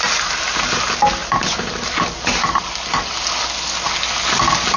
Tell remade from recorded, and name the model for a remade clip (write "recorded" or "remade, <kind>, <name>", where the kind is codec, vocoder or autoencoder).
recorded